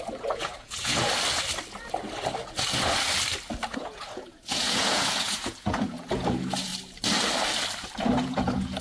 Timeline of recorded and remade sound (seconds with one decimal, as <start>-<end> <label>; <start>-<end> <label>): 0.0-1.1 remade; 1.1-3.7 recorded; 3.7-6.7 remade; 6.7-8.0 recorded; 8.0-8.8 remade